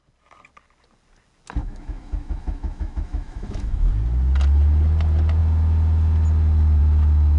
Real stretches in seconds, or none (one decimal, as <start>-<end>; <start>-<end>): 0.0-1.6; 3.9-7.4